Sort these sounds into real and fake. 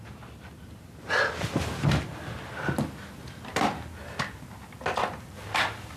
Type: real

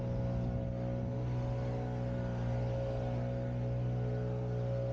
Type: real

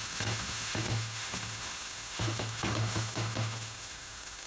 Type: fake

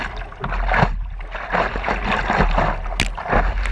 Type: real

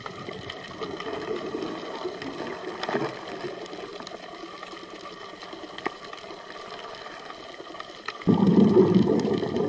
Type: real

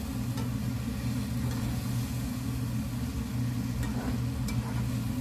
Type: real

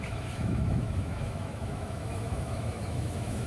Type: fake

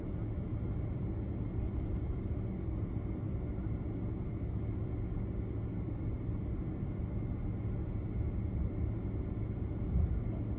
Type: real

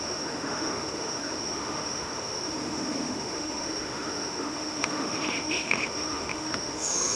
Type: fake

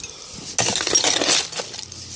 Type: real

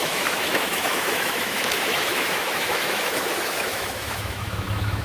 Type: fake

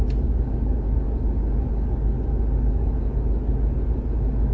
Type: real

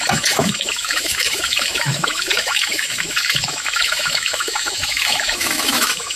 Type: fake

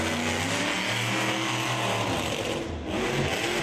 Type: real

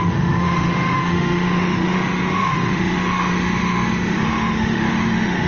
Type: fake